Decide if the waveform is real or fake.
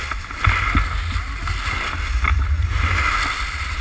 real